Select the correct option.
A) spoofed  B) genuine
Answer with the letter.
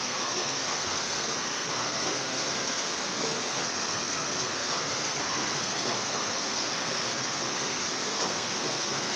A